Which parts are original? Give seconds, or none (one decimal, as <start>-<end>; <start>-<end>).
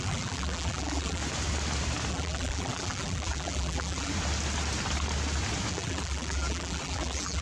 1.2-2.1; 4.1-5.7